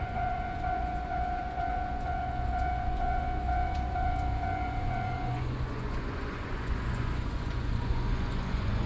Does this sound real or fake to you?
fake